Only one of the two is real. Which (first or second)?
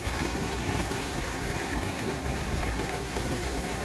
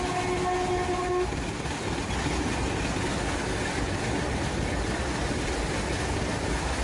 second